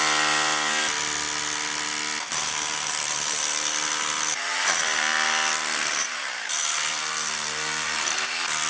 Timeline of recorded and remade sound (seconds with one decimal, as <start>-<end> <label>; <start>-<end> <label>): 0.0-8.7 recorded